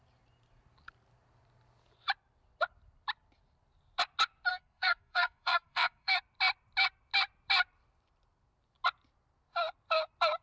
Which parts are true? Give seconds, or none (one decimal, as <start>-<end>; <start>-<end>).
0.0-4.5; 6.2-10.4